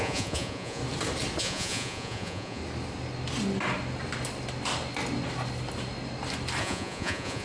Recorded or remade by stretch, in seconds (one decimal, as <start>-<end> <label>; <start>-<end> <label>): 0.0-0.8 remade; 0.8-1.4 recorded; 1.4-2.6 remade; 2.6-6.6 recorded; 6.6-7.4 remade